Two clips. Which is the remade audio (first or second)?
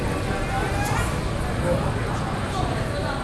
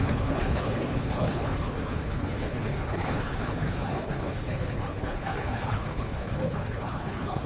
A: second